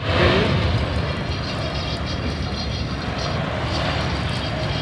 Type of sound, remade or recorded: recorded